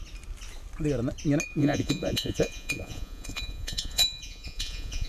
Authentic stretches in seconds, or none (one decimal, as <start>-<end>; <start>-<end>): 0.0-1.6